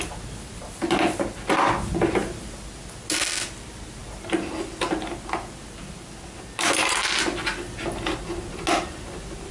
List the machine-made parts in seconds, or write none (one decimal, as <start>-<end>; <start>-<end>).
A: none